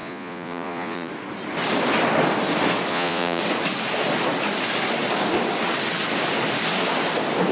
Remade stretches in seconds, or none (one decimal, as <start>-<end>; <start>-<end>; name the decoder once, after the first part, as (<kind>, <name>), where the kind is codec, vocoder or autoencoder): 0.0-1.1 (vocoder, Vocos); 2.9-3.4